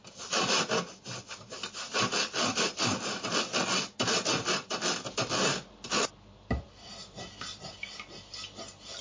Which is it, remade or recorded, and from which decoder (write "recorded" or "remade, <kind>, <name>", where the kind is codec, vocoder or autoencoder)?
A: recorded